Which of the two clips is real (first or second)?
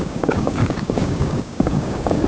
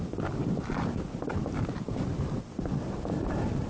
second